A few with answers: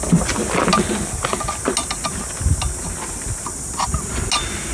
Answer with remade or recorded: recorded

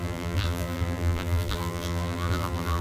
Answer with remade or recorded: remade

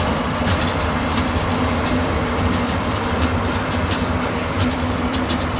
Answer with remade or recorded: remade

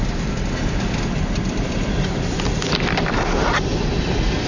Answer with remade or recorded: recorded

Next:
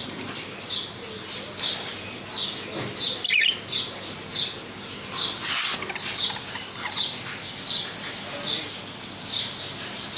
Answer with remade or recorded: recorded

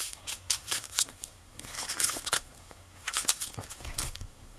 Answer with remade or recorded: remade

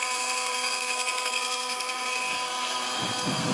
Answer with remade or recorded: remade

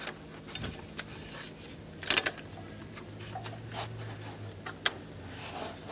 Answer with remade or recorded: recorded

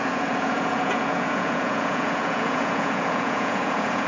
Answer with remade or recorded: remade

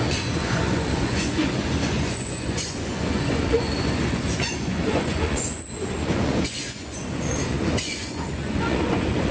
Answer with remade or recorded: remade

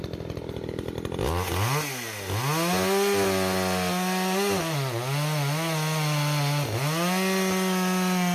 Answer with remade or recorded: recorded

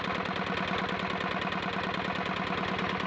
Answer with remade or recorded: recorded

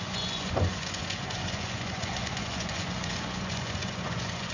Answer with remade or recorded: remade